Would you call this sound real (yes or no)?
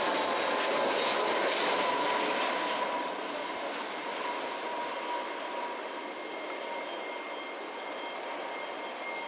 yes